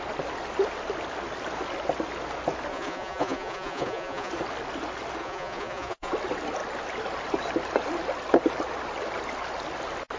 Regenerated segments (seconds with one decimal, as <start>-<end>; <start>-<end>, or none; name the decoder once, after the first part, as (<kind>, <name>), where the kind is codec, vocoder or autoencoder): 2.7-4.3 (vocoder, Vocos); 5.2-6.1